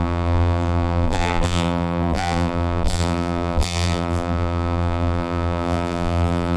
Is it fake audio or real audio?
fake